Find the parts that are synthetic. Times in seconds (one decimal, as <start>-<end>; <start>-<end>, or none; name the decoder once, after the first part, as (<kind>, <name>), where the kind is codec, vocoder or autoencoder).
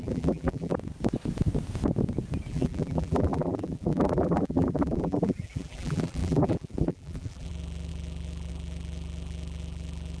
0.0-0.7 (vocoder, BigVGAN v2); 2.5-10.2